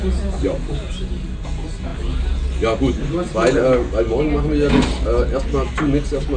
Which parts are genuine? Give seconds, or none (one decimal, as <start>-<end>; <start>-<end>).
0.0-6.4